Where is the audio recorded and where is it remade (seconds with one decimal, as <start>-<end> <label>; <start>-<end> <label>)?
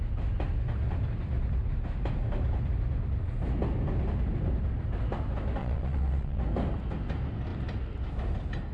0.0-5.6 recorded; 5.6-6.4 remade; 6.4-8.7 recorded